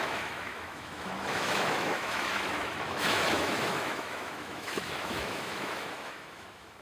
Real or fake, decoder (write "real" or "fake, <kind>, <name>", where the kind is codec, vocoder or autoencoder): fake, autoencoder, DAC-VAE